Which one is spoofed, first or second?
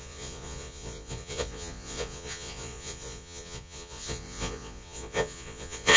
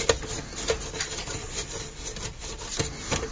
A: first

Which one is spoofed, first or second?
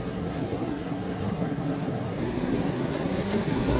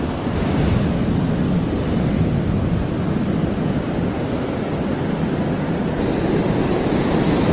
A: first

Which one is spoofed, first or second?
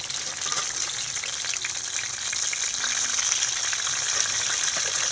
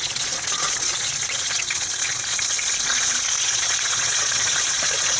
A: second